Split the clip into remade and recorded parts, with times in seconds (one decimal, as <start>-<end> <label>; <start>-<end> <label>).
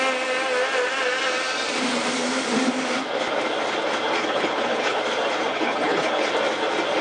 0.0-4.2 recorded; 4.2-5.0 remade; 5.0-5.5 recorded; 5.5-6.3 remade; 6.3-7.0 recorded